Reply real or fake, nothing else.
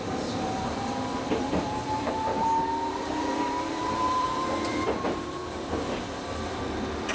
fake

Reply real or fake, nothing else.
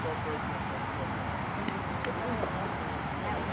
real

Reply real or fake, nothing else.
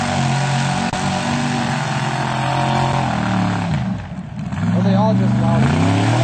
real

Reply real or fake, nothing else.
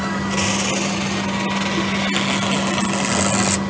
real